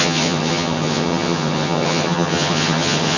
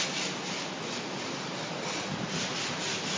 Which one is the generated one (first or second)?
first